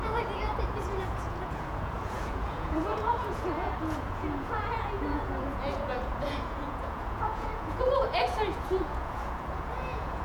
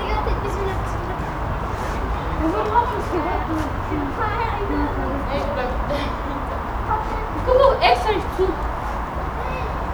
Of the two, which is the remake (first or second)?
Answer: first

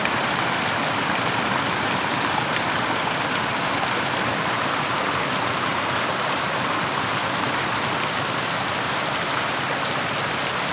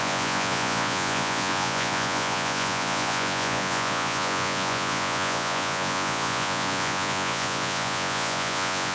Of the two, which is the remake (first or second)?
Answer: second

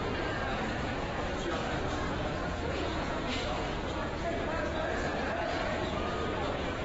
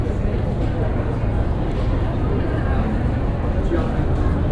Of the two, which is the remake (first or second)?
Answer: first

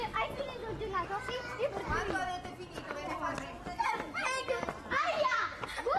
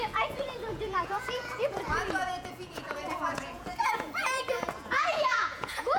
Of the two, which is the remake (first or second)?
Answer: second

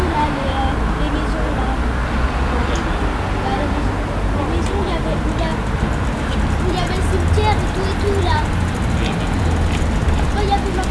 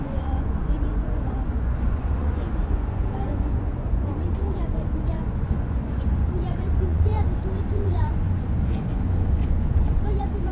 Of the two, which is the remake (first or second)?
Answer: second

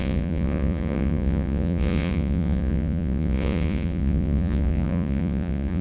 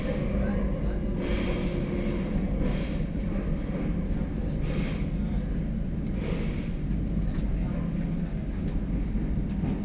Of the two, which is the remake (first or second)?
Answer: first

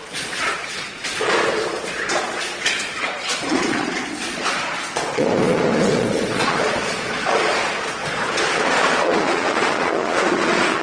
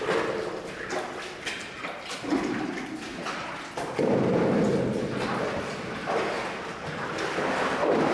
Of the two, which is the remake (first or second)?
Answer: first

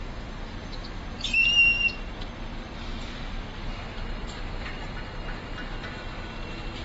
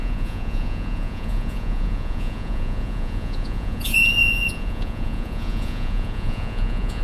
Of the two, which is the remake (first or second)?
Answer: second